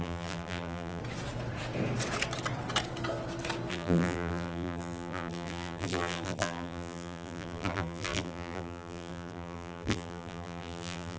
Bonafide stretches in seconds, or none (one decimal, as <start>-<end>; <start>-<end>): 1.0-3.7

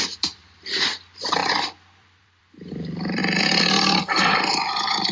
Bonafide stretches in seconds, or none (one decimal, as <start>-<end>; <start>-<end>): 3.2-4.0

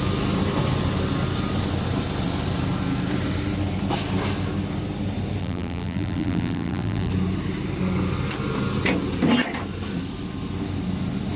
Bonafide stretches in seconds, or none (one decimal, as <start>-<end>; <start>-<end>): 0.0-5.4; 7.1-11.4

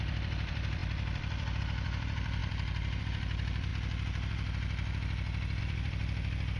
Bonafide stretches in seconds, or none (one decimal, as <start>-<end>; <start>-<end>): 3.7-5.6

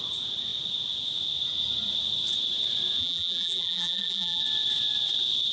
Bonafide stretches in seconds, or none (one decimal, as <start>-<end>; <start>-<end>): 0.0-3.0; 4.4-5.5

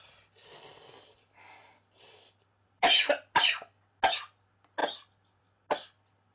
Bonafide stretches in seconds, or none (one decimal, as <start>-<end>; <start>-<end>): 0.0-6.3

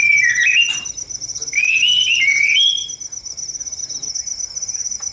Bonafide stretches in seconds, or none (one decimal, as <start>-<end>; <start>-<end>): 2.1-2.7; 3.3-5.1